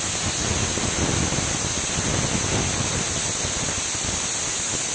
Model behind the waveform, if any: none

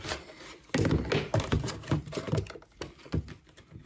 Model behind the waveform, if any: none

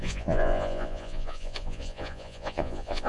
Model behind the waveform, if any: vocoder, Vocos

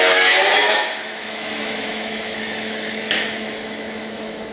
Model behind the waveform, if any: autoencoder, DAC-VAE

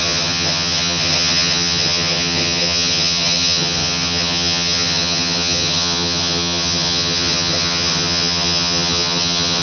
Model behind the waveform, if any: vocoder, HiFi-GAN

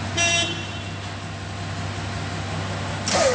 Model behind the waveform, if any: none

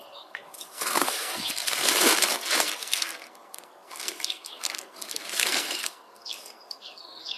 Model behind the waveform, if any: codec, SNAC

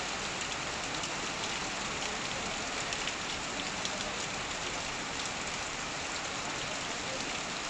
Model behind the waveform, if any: none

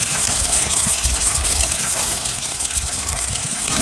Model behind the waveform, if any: codec, SNAC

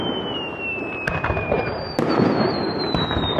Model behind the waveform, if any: none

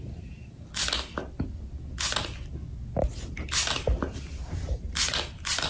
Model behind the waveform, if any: none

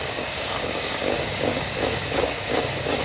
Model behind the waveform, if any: codec, DAC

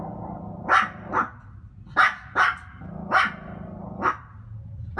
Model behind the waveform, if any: none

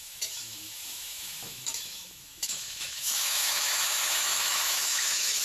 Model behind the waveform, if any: autoencoder, DAC-VAE